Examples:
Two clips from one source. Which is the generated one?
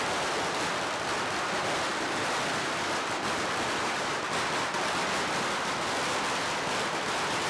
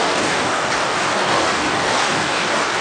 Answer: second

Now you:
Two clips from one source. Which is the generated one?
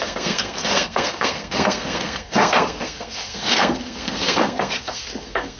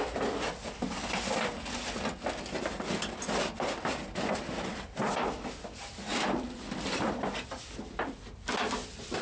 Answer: first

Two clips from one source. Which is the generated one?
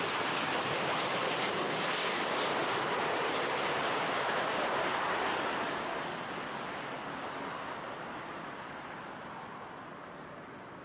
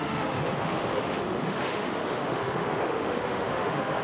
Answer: second